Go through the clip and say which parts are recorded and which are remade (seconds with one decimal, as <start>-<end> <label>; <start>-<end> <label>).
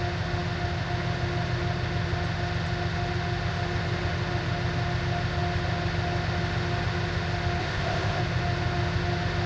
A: 0.0-7.6 recorded; 7.6-8.2 remade; 8.2-9.5 recorded